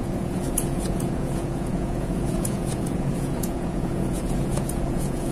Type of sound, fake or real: fake